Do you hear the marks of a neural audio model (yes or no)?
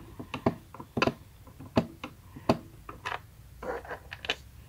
no